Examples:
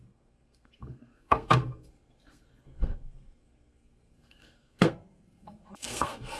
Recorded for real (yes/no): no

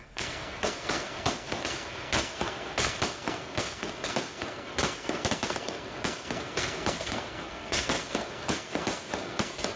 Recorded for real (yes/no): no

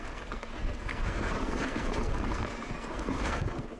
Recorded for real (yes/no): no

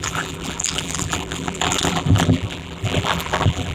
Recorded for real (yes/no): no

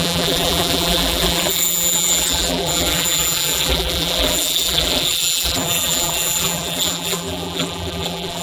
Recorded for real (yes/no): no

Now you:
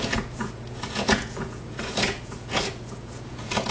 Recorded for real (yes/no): no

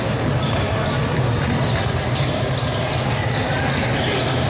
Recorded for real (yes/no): yes